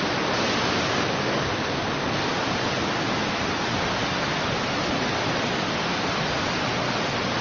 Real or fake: real